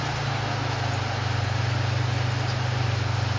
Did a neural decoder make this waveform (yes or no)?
no